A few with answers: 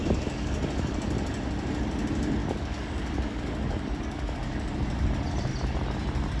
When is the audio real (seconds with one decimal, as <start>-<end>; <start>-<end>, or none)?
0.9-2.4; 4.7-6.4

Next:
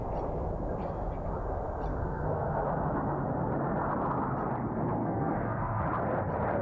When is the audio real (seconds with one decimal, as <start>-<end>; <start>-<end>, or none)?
0.0-1.9; 2.6-5.0; 5.8-6.6

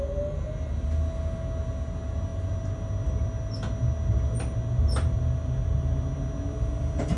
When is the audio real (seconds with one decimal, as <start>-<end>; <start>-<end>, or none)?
0.0-7.2